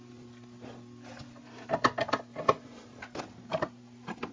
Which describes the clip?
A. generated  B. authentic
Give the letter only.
B